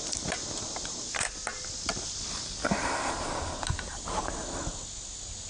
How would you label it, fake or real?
real